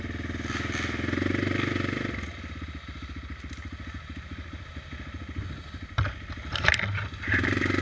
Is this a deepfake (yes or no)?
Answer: no